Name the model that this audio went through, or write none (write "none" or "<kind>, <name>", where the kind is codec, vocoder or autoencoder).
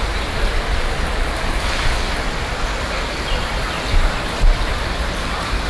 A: none